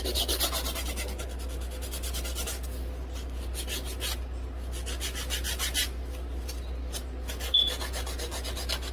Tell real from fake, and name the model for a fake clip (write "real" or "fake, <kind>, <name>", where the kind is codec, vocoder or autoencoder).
real